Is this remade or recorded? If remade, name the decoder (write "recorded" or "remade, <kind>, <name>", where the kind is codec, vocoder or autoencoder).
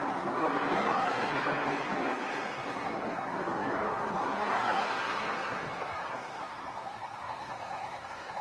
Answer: remade, codec, SNAC